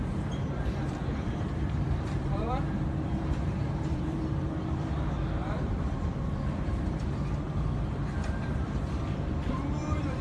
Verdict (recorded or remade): remade